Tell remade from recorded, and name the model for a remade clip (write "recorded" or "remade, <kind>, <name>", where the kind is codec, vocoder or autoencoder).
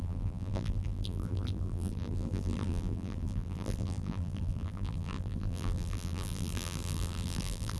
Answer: remade, vocoder, BigVGAN v2